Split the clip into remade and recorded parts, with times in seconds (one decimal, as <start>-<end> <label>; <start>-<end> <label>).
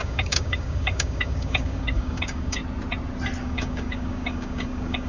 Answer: 0.0-2.6 remade; 2.6-3.4 recorded; 3.4-5.1 remade